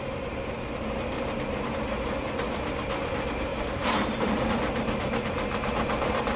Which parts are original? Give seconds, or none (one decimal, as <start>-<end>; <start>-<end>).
0.0-3.5; 4.3-6.4